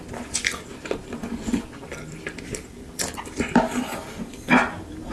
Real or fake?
real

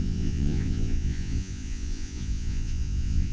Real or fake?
fake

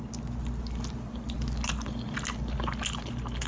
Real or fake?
real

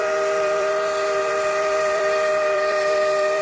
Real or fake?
fake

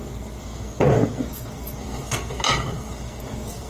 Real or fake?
fake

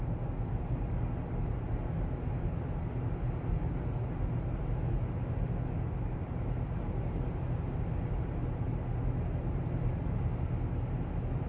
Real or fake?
real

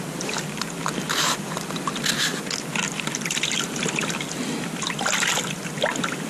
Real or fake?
real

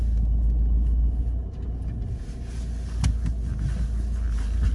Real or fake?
real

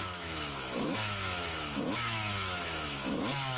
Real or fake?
fake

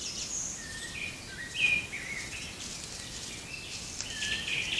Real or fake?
real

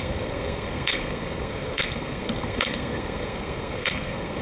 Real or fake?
fake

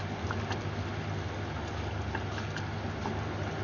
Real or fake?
real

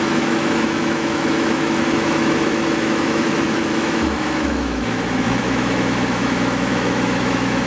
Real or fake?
fake